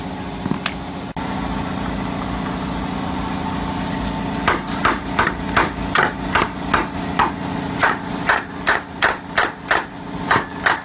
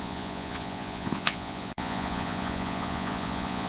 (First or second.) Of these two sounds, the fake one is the second